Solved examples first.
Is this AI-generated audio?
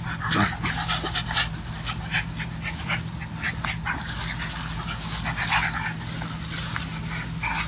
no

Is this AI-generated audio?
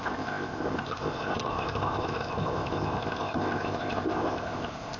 yes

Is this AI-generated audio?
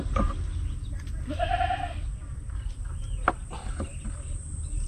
no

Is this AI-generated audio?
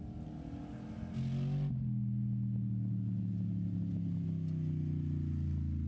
no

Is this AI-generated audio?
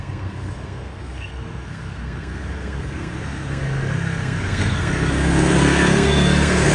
yes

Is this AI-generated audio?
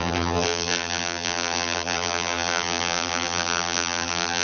yes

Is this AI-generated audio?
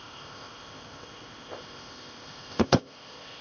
yes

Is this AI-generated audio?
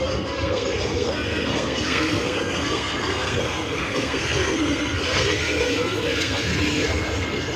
yes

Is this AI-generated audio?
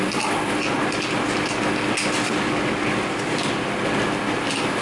no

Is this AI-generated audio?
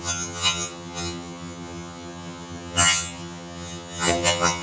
yes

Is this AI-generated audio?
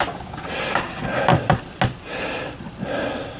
no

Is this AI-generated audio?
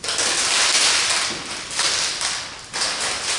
no